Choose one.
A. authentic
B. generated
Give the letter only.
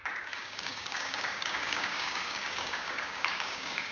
B